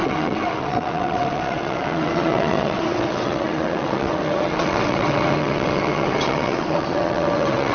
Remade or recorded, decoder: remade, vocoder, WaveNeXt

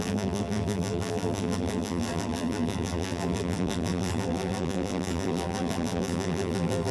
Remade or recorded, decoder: remade, vocoder, BigVGAN v2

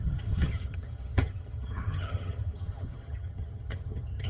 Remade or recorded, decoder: remade, vocoder, HiFi-GAN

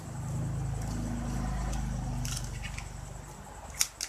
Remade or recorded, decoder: recorded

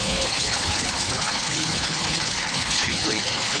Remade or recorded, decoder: remade, codec, HILCodec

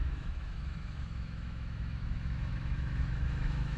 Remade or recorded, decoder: remade, autoencoder, DAC-VAE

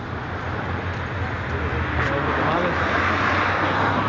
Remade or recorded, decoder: recorded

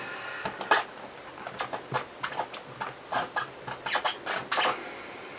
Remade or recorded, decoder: recorded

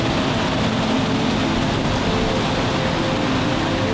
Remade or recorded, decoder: recorded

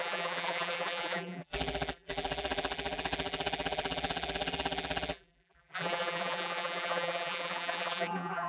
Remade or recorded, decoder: remade, vocoder, BigVGAN v2